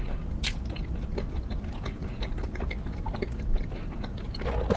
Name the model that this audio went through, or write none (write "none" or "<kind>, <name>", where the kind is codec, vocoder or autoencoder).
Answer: none